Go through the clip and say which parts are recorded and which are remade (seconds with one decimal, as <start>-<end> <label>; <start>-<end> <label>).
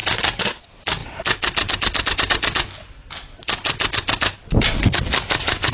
0.0-5.7 recorded